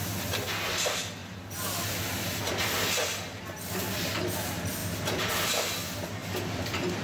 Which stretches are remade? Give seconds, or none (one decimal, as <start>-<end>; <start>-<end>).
4.8-5.3; 6.2-7.0